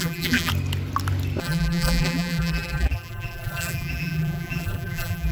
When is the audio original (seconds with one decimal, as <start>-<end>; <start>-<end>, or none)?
0.5-1.4